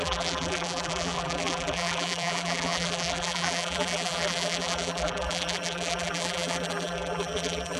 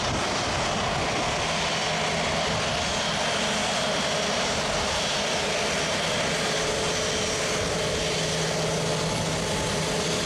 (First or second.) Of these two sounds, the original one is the second